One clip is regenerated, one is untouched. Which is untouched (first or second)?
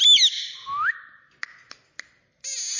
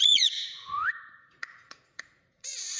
first